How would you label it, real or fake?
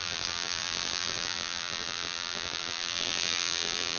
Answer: fake